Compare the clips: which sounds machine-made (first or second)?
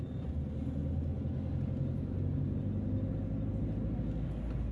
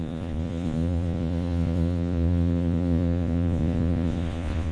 second